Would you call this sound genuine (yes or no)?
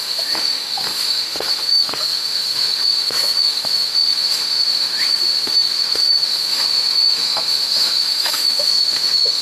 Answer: no